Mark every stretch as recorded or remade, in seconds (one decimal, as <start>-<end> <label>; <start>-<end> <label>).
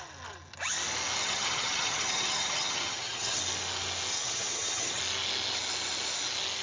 0.0-1.2 recorded; 1.2-3.4 remade; 3.4-4.1 recorded; 4.1-5.0 remade; 5.0-6.6 recorded